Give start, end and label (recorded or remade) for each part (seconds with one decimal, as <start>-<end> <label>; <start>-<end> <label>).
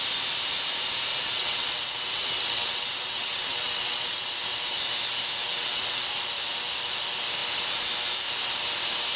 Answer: 0.0-1.1 recorded; 1.1-4.3 remade; 4.3-5.4 recorded; 5.4-6.1 remade; 6.1-9.2 recorded